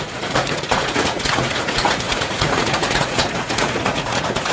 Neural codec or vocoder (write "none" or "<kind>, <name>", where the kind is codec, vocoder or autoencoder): vocoder, Vocos